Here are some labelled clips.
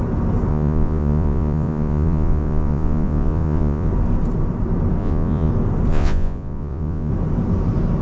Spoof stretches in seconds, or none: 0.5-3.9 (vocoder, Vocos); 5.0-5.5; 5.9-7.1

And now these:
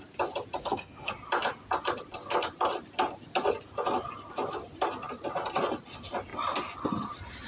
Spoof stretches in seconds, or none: 0.6-1.1 (codec, SNAC)

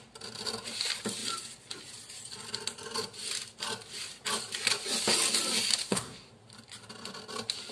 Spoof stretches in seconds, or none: 5.8-6.3 (codec, SNAC)

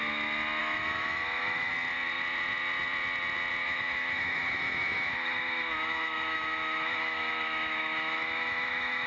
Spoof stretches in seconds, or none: 0.6-1.7 (autoencoder, DAC-VAE); 3.6-9.1

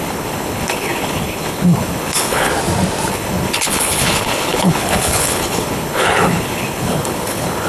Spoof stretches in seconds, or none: 0.0-2.5 (codec, HILCodec); 3.1-7.7

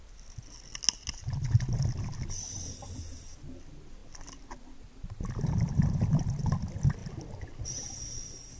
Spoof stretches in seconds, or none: none

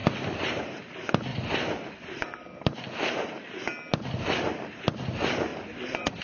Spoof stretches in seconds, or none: 0.0-0.6 (vocoder, BigVGAN v2); 1.3-3.5; 5.5-6.2

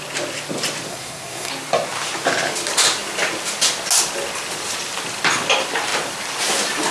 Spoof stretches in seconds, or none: 0.9-1.5 (codec, SNAC)